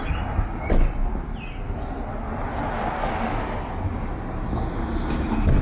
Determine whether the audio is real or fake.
real